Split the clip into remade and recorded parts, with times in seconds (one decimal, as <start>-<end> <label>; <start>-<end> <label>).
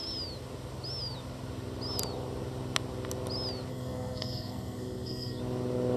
0.0-3.7 recorded; 3.7-5.4 remade; 5.4-6.0 recorded